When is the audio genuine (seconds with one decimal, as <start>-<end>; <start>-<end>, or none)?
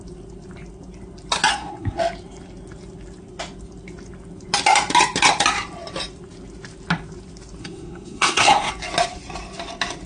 0.0-1.5; 2.0-7.6; 8.7-10.1